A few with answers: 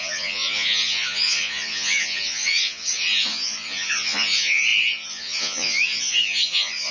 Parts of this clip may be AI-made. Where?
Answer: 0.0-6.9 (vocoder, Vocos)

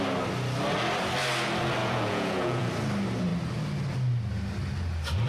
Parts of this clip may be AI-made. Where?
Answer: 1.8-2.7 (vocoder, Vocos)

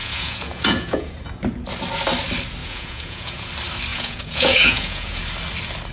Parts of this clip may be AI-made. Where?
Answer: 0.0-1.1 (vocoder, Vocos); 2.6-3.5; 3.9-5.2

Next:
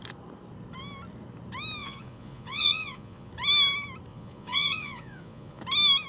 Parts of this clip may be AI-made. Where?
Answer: 1.8-3.3 (vocoder, Vocos); 4.1-5.6

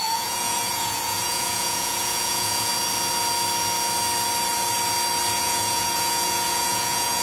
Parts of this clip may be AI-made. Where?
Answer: 0.0-2.7 (vocoder, Vocos); 5.4-7.2

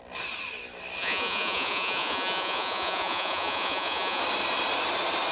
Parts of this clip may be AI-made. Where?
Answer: 1.0-4.2 (vocoder, Vocos)

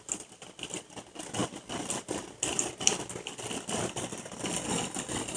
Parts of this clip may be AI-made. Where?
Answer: none

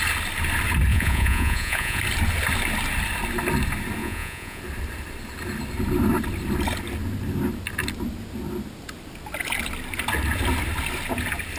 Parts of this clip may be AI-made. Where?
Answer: 0.9-2.0 (vocoder, Vocos); 4.0-4.6